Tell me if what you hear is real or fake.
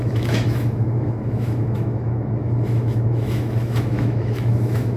fake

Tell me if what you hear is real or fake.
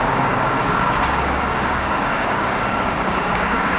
fake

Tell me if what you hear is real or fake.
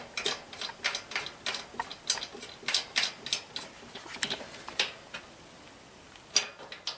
real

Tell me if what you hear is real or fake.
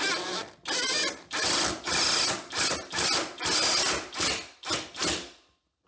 real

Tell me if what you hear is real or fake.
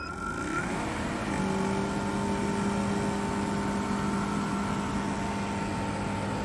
real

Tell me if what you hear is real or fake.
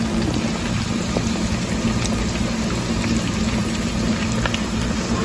real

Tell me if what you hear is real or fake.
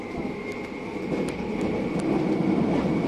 real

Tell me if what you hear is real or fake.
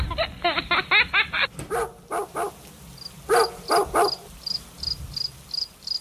real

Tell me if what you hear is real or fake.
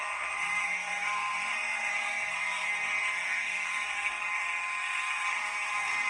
fake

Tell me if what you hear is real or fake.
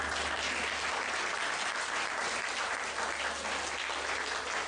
real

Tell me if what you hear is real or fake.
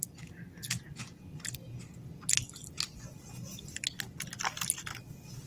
real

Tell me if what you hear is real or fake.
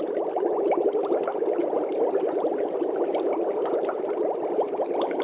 real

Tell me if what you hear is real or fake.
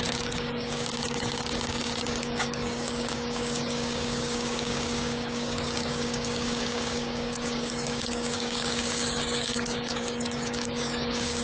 fake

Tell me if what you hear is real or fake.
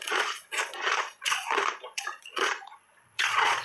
fake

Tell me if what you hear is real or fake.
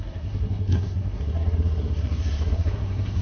fake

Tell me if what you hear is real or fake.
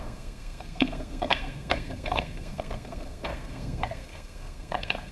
fake